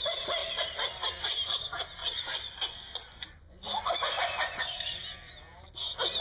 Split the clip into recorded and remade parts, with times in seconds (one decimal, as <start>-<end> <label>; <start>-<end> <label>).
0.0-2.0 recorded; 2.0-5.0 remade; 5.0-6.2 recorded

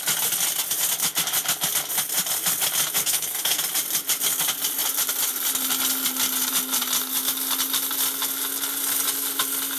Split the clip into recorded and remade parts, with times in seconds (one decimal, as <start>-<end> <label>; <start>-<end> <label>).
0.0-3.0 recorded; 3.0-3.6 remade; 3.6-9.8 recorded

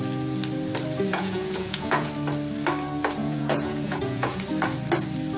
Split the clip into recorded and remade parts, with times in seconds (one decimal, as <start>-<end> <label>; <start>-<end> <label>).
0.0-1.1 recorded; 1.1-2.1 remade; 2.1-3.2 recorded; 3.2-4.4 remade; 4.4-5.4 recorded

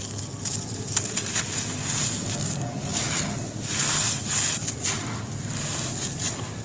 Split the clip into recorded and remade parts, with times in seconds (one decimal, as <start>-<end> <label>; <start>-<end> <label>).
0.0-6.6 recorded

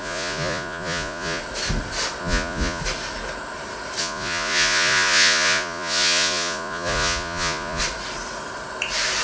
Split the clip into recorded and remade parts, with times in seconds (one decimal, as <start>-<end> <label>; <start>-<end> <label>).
0.0-1.4 remade; 1.4-2.2 recorded; 2.2-2.8 remade; 2.8-4.0 recorded; 4.0-7.8 remade; 7.8-9.2 recorded